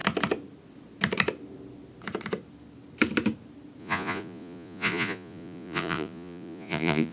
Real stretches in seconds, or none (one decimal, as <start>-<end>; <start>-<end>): 0.0-3.8